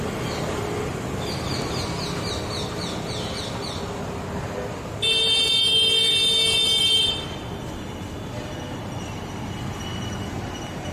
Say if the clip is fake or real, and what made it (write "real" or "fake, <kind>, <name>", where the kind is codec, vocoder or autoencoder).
real